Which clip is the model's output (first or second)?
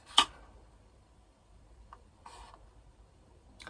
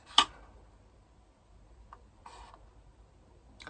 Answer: first